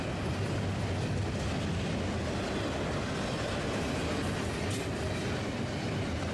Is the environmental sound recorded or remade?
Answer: recorded